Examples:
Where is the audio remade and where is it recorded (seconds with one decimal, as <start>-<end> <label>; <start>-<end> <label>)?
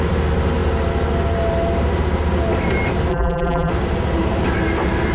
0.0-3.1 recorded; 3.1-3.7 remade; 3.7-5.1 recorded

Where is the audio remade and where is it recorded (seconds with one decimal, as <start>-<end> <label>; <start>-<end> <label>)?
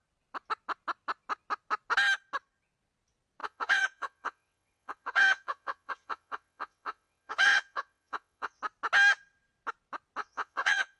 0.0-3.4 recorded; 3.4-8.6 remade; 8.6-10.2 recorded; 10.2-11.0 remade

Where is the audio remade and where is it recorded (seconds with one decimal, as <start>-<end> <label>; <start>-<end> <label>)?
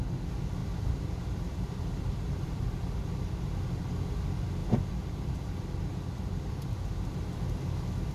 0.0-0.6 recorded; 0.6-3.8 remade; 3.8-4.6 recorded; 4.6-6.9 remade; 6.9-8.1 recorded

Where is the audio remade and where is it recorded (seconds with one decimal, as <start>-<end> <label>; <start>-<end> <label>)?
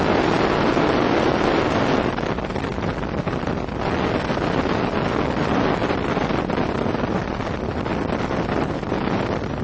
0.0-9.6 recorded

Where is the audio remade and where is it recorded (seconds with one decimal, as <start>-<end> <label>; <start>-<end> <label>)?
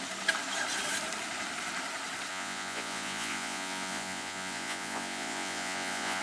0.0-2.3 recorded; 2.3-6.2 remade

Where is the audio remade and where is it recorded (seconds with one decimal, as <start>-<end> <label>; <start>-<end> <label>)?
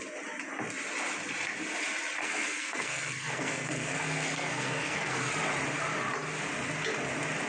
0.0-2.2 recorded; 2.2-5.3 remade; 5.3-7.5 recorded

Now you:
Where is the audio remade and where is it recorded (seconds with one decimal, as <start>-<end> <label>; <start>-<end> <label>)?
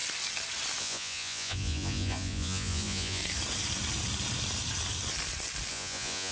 0.0-0.8 recorded; 0.8-3.2 remade; 3.2-5.7 recorded; 5.7-6.3 remade